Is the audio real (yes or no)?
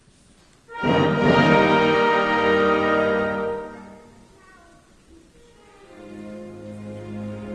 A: yes